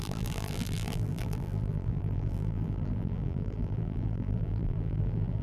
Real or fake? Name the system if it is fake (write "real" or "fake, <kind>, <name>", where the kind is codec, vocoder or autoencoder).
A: fake, vocoder, BigVGAN v2